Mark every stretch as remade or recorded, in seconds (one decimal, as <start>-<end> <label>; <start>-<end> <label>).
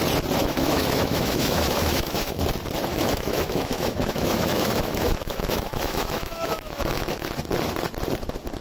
0.0-0.4 recorded; 0.4-2.4 remade; 2.4-2.9 recorded; 2.9-7.3 remade; 7.3-8.6 recorded